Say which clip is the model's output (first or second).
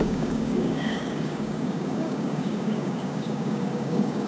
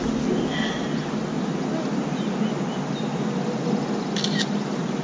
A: first